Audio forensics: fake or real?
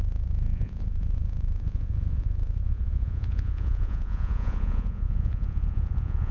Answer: fake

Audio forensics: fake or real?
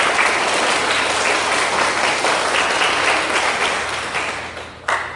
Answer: real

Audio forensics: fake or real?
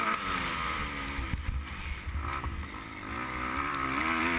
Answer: real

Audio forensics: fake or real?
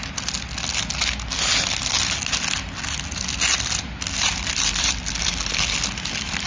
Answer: real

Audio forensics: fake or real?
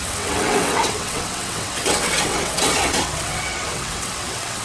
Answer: fake